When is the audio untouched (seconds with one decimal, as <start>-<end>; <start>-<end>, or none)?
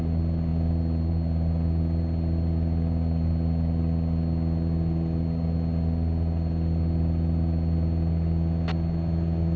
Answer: 0.0-9.6